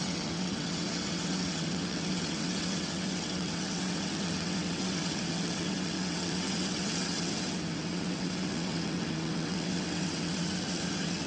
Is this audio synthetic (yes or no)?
yes